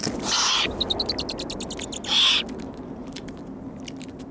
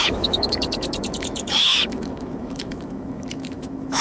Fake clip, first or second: second